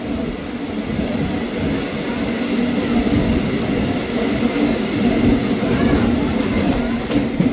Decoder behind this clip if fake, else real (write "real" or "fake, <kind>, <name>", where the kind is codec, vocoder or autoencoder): real